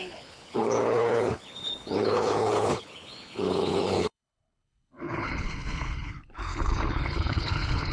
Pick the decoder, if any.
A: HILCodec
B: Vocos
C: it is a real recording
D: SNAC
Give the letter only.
A